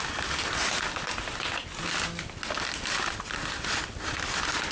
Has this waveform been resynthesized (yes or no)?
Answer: no